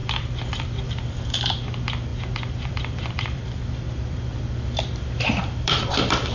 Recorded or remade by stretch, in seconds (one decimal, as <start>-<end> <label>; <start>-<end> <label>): 0.0-1.2 remade; 1.2-2.1 recorded; 2.1-6.3 remade